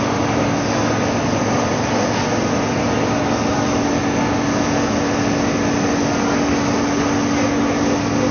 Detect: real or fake real